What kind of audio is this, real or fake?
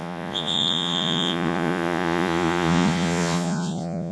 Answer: fake